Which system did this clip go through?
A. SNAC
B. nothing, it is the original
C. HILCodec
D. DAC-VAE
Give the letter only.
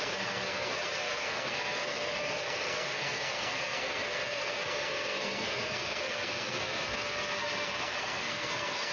A